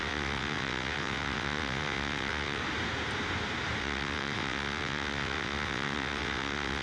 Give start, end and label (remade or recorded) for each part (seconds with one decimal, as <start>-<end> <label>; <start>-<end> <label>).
0.0-2.6 remade; 2.6-3.8 recorded; 3.8-6.8 remade